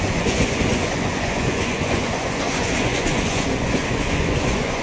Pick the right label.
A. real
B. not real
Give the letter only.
B